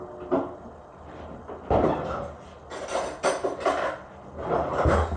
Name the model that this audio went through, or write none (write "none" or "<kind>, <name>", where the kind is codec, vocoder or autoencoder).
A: none